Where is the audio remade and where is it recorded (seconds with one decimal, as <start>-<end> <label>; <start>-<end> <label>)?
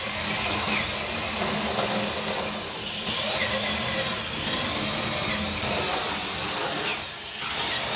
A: 0.0-8.0 recorded